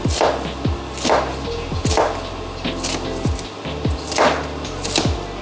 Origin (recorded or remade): recorded